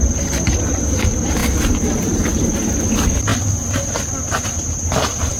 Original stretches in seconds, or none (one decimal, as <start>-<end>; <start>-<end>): 0.0-5.4

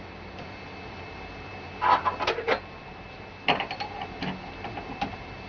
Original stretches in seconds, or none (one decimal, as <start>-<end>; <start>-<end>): 0.0-5.5

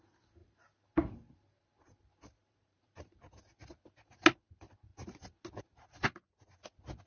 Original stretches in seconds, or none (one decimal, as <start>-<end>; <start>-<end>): 0.0-0.4; 3.2-7.1

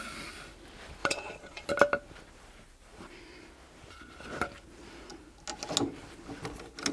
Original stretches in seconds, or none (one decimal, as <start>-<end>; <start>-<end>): 0.0-1.0; 1.7-6.9